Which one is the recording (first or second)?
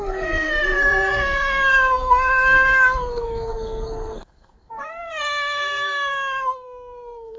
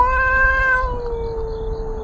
second